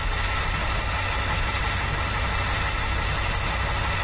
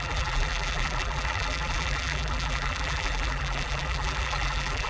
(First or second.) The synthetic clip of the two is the second